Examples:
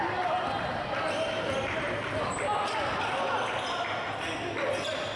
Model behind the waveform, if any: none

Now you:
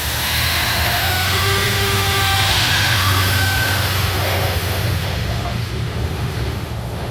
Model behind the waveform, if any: autoencoder, DAC-VAE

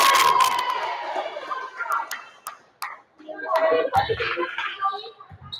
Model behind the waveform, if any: none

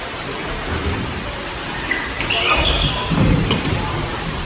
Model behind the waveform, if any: vocoder, BigVGAN v2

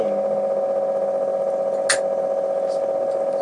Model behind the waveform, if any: none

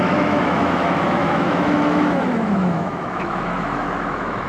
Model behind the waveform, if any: autoencoder, DAC-VAE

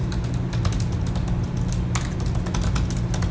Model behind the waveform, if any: none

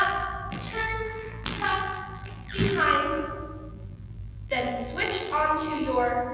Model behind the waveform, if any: vocoder, BigVGAN v2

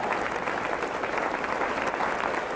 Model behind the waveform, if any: none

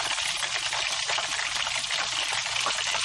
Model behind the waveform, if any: none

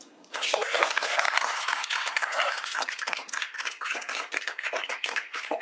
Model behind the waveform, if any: codec, SNAC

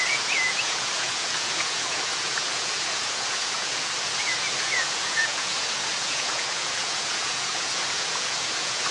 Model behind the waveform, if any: vocoder, Vocos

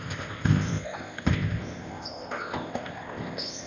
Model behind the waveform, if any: codec, ZipCodec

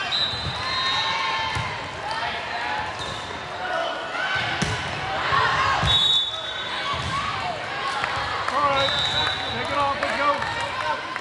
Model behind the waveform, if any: none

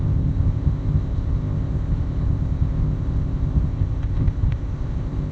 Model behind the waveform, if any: codec, ZipCodec